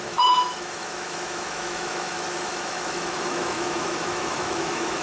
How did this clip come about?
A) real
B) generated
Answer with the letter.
B